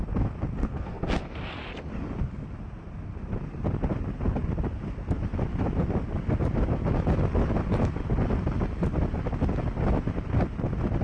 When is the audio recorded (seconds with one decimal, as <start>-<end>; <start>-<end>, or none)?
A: 0.0-0.6; 1.3-11.0